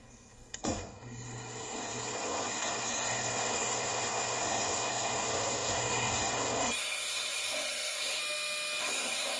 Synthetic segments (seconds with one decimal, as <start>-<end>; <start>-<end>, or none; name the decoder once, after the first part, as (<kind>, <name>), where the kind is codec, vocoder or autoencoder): 0.0-8.2 (codec, SNAC); 8.8-9.4